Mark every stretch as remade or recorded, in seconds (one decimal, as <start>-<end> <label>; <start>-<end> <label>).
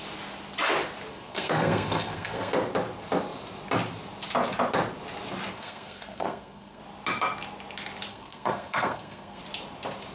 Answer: 0.0-1.1 recorded; 1.1-2.5 remade; 2.5-5.5 recorded; 5.5-6.8 remade; 6.8-8.1 recorded; 8.1-9.4 remade; 9.4-10.1 recorded